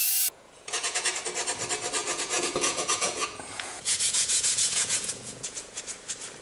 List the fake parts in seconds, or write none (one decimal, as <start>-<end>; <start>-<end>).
0.0-1.2; 2.0-5.8